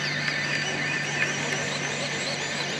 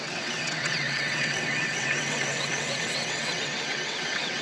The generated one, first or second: second